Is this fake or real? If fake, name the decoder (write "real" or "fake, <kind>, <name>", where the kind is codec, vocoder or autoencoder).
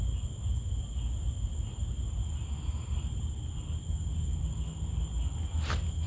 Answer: real